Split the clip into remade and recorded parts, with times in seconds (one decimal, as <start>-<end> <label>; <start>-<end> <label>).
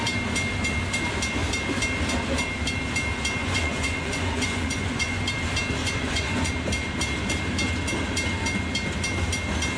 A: 0.0-3.4 recorded; 3.4-5.2 remade; 5.2-5.8 recorded; 5.8-6.5 remade; 6.5-9.8 recorded